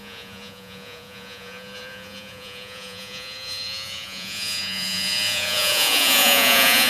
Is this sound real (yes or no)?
no